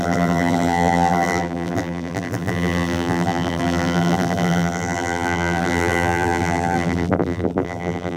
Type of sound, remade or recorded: remade